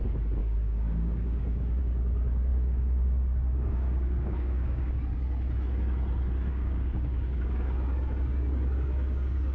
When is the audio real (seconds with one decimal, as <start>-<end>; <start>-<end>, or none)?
0.0-0.4; 1.8-2.5; 4.9-6.5; 7.4-9.5